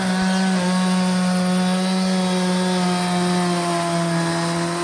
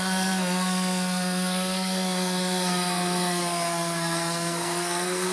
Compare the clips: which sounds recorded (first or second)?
first